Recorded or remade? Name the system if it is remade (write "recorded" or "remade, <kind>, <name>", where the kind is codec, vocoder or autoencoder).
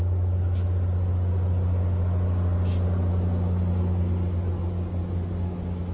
recorded